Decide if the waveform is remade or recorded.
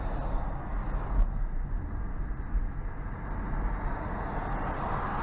recorded